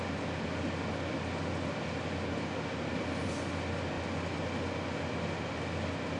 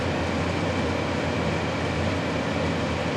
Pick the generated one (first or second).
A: second